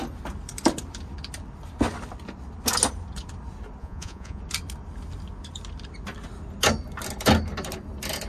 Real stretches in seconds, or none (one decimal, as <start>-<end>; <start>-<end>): 0.0-3.8; 4.4-8.3